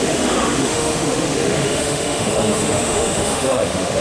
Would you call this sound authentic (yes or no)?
no